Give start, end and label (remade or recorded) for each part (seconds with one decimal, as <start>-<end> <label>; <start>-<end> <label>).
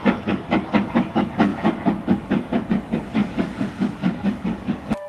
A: 0.0-5.1 remade